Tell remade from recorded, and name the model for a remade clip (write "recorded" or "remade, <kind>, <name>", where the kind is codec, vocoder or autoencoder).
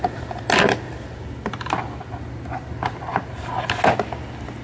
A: recorded